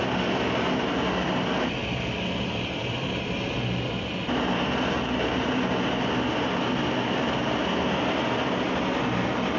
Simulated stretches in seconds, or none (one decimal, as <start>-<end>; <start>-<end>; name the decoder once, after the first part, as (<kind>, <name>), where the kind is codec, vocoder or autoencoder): none